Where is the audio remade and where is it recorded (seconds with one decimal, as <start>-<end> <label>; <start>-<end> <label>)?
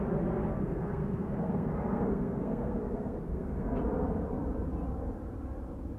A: 0.0-0.4 recorded; 0.4-3.8 remade; 3.8-6.0 recorded